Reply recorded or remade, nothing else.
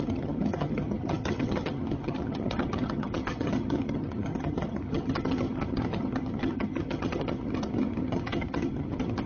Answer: remade